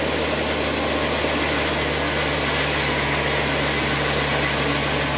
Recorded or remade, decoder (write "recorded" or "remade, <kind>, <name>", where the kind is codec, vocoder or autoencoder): recorded